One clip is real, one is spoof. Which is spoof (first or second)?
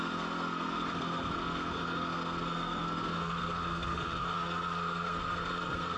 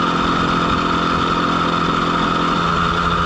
first